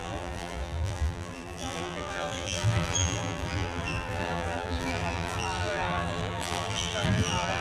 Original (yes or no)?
no